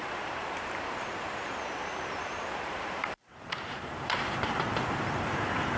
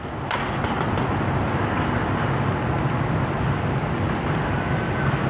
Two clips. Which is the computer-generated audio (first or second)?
first